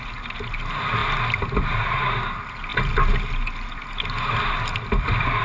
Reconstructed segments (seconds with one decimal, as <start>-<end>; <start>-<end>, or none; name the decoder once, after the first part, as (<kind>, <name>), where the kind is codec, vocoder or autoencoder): none

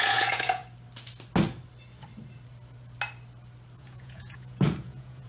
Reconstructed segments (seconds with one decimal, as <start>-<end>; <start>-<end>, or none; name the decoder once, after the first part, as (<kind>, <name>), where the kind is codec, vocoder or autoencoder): 0.0-0.6 (vocoder, Vocos); 3.8-5.3

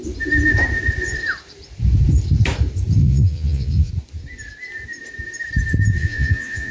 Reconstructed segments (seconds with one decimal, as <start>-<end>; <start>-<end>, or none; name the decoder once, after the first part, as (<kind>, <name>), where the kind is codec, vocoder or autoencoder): 3.0-3.9 (vocoder, Vocos); 6.0-6.7

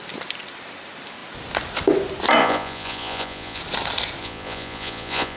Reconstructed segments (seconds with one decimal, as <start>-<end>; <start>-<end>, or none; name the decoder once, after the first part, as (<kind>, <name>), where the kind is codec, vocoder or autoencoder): 2.4-3.6 (vocoder, Vocos); 4.2-5.4

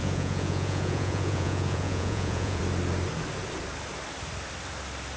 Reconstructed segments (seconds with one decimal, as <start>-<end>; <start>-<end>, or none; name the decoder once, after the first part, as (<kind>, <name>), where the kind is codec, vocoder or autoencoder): 0.0-2.6 (vocoder, Vocos)

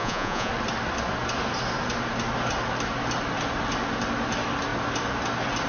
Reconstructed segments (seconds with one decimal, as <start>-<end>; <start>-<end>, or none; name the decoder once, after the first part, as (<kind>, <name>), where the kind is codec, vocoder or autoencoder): 0.0-0.5 (vocoder, Vocos)

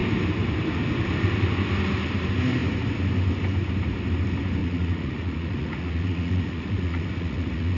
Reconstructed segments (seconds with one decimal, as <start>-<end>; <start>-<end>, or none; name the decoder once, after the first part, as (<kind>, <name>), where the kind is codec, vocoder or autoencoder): 4.6-7.8 (vocoder, Vocos)